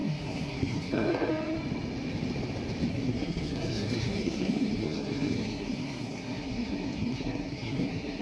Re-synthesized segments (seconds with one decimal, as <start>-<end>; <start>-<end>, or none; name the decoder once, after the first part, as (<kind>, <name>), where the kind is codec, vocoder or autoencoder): 0.0-1.3 (codec, SNAC); 2.9-8.2